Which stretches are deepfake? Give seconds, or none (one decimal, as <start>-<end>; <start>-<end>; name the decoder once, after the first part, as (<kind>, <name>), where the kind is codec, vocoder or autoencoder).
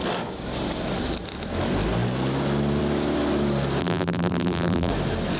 3.8-4.9 (vocoder, BigVGAN v2)